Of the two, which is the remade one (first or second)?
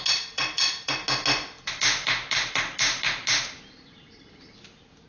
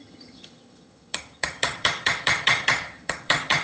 second